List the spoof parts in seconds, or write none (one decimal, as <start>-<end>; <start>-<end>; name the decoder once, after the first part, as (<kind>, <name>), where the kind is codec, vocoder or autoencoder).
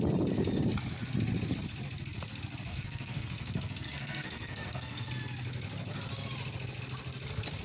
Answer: 2.7-5.1 (codec, SNAC)